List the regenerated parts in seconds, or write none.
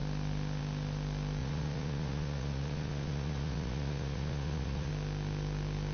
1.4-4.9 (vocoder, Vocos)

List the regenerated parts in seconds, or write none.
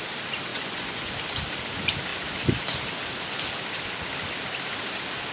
0.5-1.1 (vocoder, Vocos)